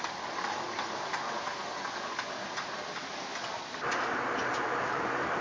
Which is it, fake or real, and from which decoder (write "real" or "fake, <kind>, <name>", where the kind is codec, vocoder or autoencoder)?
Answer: real